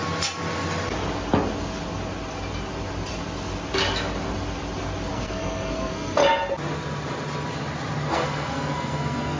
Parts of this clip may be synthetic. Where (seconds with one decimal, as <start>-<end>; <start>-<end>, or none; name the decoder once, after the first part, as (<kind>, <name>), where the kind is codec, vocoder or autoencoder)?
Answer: 5.1-6.2 (codec, SNAC); 8.1-9.4